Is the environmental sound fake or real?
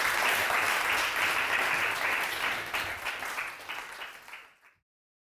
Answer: real